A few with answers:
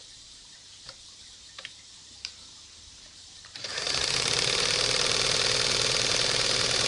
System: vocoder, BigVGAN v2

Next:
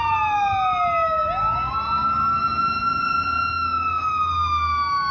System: none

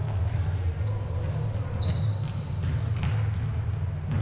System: none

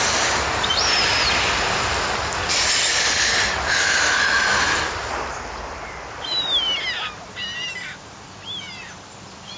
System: none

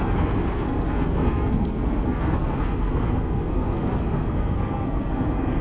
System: codec, SNAC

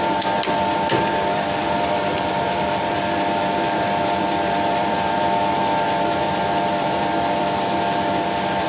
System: vocoder, BigVGAN v2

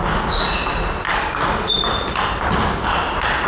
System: none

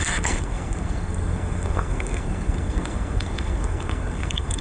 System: codec, SNAC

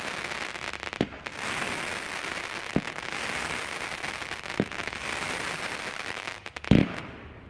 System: none